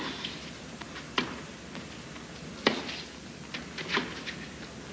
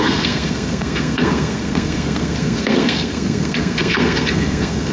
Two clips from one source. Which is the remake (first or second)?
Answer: second